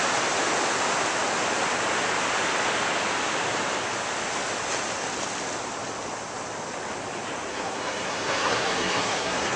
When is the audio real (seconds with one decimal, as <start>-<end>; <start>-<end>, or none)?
0.0-7.5